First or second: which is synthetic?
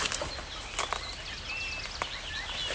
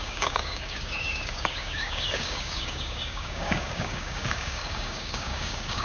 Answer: second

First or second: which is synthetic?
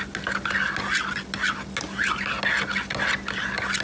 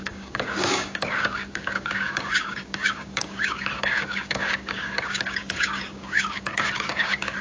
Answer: second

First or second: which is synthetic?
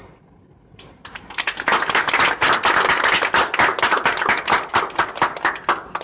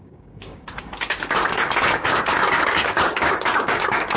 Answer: second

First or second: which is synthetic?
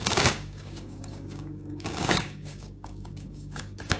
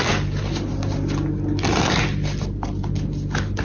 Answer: first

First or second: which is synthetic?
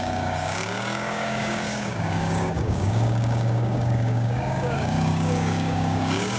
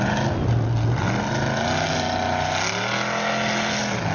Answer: first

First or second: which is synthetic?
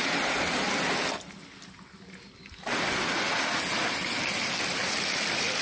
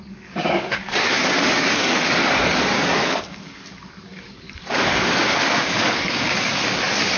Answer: second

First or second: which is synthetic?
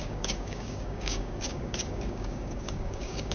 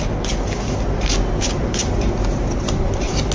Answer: first